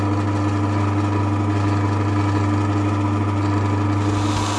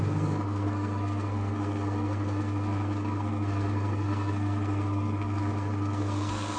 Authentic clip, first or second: first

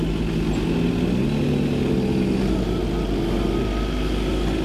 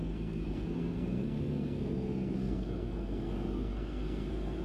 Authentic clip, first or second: first